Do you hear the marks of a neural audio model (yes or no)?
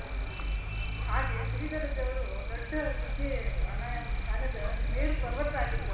no